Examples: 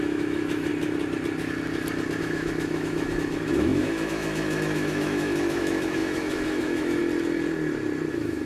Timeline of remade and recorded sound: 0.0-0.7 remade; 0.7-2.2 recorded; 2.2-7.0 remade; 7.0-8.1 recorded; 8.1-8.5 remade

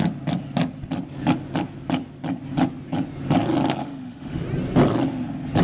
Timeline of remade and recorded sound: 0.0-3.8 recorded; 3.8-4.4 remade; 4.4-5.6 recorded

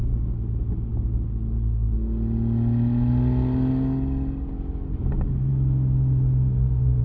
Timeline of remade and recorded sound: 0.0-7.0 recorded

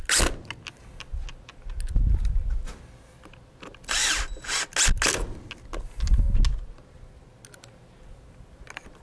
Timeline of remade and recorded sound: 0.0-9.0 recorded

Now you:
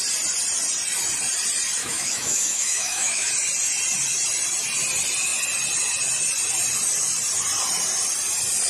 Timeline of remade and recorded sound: 0.0-1.8 recorded; 1.8-3.3 remade; 3.3-8.7 recorded

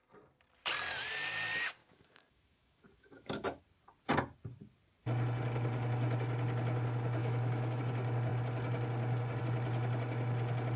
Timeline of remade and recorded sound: 0.0-1.8 recorded; 1.8-3.6 remade; 3.6-7.2 recorded; 7.2-7.8 remade; 7.8-10.8 recorded